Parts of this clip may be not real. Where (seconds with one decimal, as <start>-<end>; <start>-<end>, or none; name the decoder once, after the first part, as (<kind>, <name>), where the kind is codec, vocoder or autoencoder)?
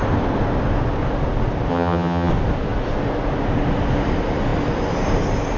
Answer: 1.7-2.3 (vocoder, HiFi-GAN)